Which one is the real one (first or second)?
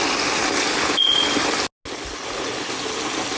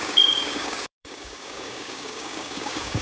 first